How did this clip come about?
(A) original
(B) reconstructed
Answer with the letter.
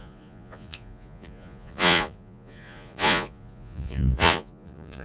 B